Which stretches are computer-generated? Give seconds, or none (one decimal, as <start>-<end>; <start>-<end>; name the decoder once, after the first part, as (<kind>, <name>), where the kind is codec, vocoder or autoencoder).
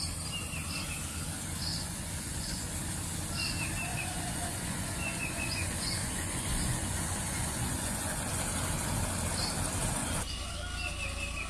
1.7-2.7 (vocoder, Vocos); 3.9-8.4; 10.0-10.5